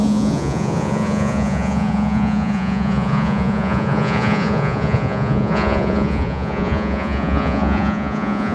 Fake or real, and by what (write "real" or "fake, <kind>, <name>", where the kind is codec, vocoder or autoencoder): fake, vocoder, Vocos